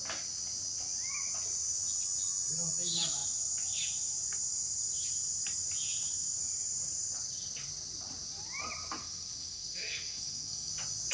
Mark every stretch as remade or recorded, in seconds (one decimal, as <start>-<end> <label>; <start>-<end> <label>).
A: 0.0-9.0 recorded; 9.0-10.7 remade; 10.7-11.1 recorded